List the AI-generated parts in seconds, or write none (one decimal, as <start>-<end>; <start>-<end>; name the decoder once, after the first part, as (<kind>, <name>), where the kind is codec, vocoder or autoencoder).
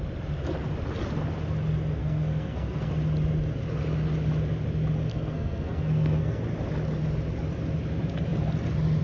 2.0-2.9 (codec, SNAC); 5.1-6.4